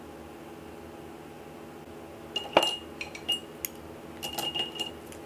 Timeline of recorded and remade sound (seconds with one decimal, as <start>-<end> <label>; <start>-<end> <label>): 0.0-5.3 recorded